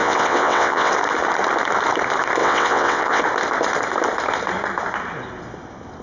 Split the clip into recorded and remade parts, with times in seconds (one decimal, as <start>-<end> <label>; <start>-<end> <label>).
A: 0.0-0.9 remade; 0.9-2.4 recorded; 2.4-3.2 remade; 3.2-6.0 recorded